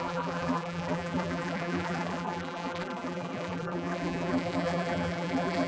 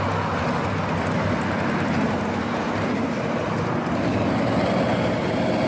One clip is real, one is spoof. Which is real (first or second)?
second